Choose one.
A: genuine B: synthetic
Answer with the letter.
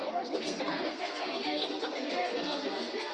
B